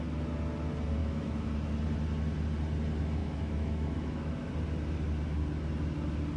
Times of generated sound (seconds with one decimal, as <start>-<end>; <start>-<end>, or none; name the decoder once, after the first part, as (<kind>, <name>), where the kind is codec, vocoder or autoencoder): 1.0-1.5 (autoencoder, DAC-VAE); 3.2-4.5